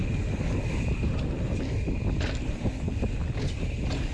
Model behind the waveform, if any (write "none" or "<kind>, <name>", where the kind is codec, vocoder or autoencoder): none